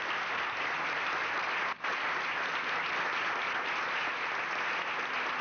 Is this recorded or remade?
recorded